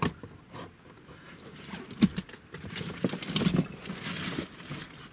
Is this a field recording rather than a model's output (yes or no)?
yes